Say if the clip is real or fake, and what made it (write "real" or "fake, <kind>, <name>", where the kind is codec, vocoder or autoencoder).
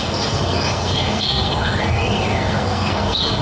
fake, codec, SNAC